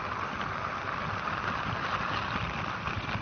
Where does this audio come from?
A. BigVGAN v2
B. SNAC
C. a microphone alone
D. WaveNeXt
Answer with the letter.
C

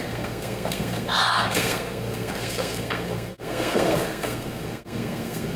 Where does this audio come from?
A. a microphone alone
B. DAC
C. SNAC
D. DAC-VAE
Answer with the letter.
C